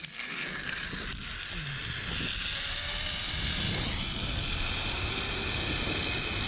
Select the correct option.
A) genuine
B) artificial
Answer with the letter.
A